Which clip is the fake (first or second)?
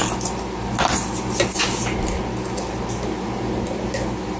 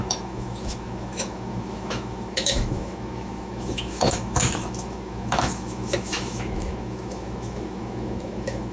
second